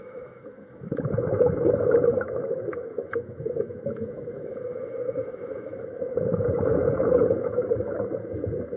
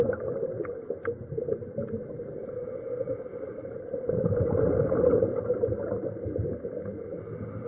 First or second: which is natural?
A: second